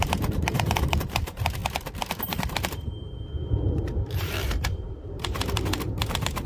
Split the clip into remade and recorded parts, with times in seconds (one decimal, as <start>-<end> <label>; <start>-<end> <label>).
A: 0.0-1.6 remade; 1.6-2.5 recorded; 2.5-6.5 remade